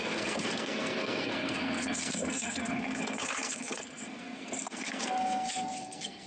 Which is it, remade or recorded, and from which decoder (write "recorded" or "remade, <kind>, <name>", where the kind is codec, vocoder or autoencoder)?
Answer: remade, codec, SNAC